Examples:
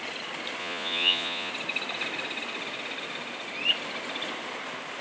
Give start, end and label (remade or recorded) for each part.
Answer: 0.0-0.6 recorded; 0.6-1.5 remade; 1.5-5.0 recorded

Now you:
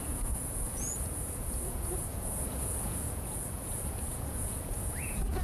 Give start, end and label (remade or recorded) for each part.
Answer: 0.0-5.4 remade

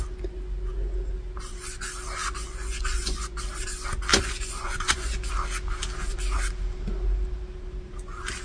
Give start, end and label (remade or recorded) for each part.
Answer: 0.0-2.2 recorded; 2.2-3.4 remade; 3.4-4.1 recorded; 4.1-5.3 remade; 5.3-8.4 recorded

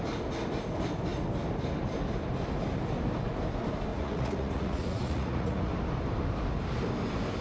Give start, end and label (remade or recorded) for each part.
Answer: 0.0-3.9 recorded; 3.9-5.7 remade; 5.7-7.4 recorded

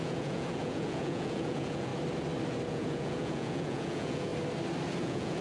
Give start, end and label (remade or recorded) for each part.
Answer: 0.0-1.9 remade; 1.9-2.7 recorded; 2.7-4.3 remade; 4.3-5.0 recorded; 5.0-5.4 remade

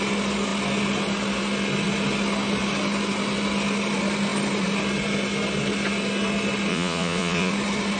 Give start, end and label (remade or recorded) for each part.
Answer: 0.0-6.7 recorded; 6.7-7.5 remade; 7.5-8.0 recorded

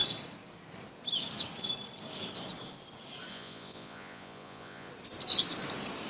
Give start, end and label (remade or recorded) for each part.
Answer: 0.0-3.3 recorded; 3.3-4.9 remade; 4.9-6.1 recorded